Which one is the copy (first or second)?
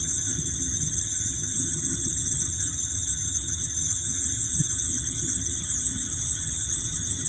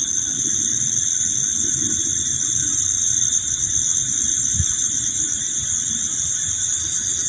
first